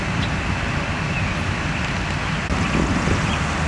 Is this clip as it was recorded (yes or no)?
yes